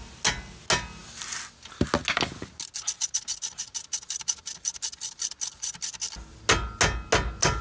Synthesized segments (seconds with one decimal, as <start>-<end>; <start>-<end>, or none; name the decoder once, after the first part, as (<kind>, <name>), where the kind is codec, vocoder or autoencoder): none

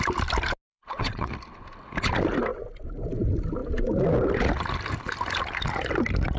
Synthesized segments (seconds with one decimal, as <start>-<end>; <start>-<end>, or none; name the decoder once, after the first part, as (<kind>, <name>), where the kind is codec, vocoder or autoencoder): 0.7-1.3 (vocoder, WaveNeXt)

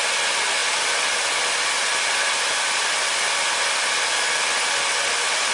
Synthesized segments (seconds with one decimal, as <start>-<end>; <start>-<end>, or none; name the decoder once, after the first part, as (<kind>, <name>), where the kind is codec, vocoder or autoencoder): none

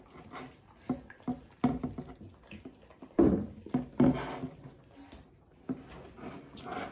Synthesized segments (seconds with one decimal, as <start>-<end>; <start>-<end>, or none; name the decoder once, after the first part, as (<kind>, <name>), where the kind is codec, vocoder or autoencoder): none